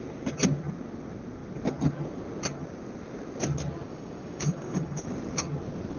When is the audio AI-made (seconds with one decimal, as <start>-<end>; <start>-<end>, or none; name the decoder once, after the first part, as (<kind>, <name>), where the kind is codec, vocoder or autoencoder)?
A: 3.9-5.0 (codec, DAC)